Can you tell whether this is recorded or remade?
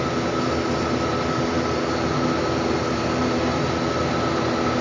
recorded